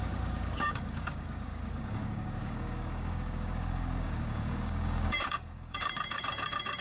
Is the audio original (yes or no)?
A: no